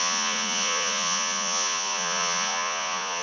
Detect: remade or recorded remade